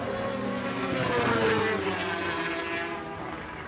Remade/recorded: recorded